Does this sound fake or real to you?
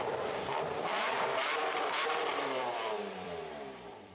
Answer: fake